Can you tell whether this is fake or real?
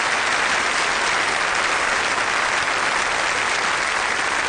real